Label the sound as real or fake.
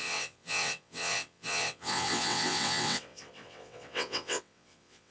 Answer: fake